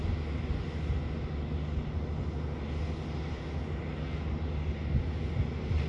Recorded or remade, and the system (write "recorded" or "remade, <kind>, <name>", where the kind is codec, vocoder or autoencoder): recorded